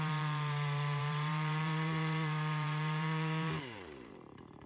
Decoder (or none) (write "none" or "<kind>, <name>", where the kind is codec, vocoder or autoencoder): vocoder, BigVGAN v2